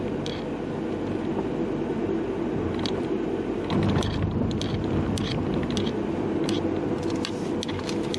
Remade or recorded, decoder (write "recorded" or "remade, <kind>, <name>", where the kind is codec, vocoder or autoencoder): recorded